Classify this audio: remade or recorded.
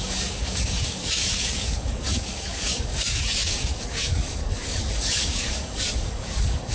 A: remade